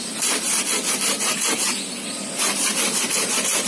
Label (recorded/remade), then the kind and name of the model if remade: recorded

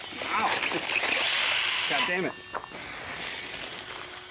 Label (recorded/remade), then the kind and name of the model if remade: recorded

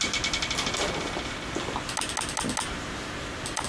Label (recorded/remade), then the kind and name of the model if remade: recorded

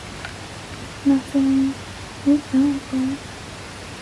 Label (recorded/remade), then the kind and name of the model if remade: recorded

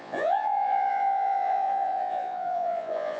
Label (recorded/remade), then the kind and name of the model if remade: remade, vocoder, Vocos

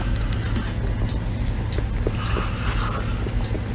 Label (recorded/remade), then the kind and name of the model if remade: recorded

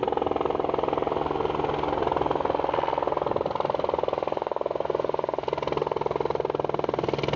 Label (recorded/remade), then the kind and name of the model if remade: recorded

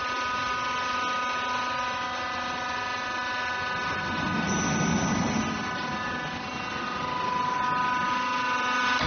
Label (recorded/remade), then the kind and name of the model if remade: recorded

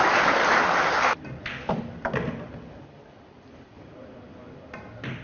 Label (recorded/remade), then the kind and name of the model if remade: recorded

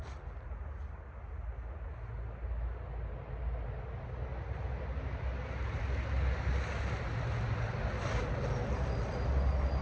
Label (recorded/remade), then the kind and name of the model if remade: recorded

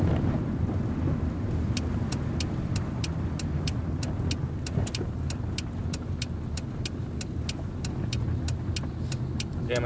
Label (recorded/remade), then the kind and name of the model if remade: recorded